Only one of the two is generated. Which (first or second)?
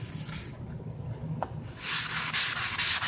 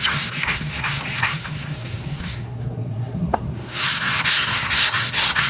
second